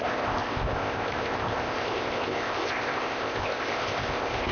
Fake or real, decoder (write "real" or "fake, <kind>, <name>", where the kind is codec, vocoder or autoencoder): fake, codec, ZipCodec